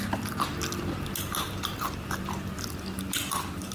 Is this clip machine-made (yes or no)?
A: no